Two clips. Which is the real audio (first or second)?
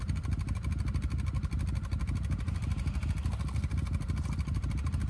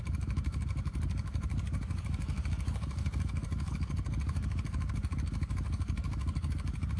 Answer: first